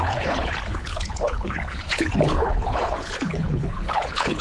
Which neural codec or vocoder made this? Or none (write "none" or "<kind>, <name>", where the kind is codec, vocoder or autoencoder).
codec, HILCodec